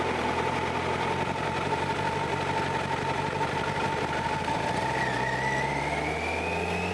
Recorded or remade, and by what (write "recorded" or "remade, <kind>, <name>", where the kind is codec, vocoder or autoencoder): recorded